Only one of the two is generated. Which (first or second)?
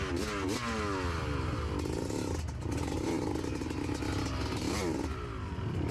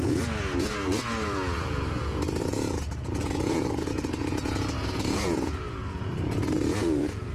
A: second